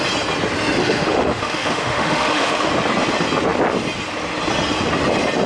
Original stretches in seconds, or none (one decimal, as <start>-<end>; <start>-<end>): 0.0-0.8; 2.7-5.5